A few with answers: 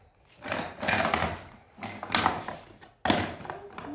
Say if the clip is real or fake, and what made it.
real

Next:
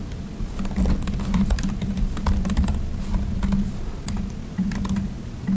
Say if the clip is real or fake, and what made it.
real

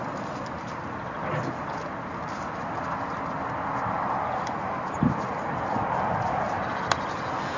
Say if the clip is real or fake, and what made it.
real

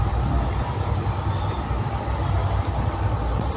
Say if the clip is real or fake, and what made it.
real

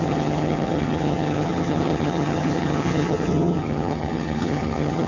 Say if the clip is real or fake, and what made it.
fake, vocoder, HiFi-GAN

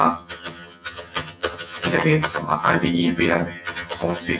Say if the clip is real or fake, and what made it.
fake, vocoder, HiFi-GAN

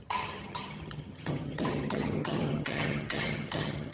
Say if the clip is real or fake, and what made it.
fake, vocoder, HiFi-GAN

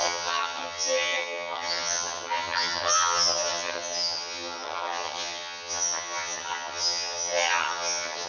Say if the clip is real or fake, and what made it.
fake, vocoder, HiFi-GAN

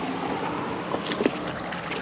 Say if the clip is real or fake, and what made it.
real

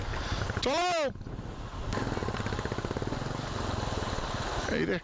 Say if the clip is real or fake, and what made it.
real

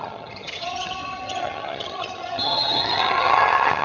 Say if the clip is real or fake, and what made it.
fake, vocoder, HiFi-GAN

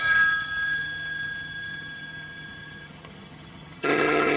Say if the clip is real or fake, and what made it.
fake, vocoder, HiFi-GAN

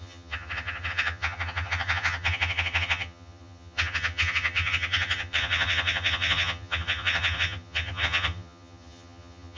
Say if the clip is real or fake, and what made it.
fake, vocoder, HiFi-GAN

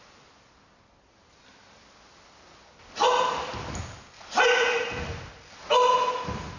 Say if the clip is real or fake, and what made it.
real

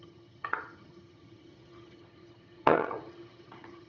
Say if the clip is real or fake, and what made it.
fake, vocoder, HiFi-GAN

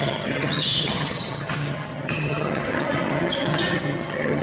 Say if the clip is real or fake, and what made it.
fake, vocoder, HiFi-GAN